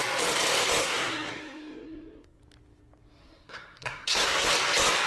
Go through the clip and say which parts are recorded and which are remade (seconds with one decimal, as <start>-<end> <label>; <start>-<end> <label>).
0.0-0.8 recorded; 0.8-2.4 remade; 2.4-3.2 recorded; 3.2-4.5 remade; 4.5-5.1 recorded